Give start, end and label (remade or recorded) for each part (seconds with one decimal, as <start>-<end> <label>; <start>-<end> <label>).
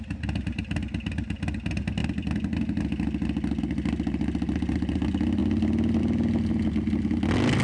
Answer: 0.0-7.6 recorded